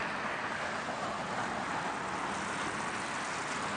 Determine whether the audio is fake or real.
real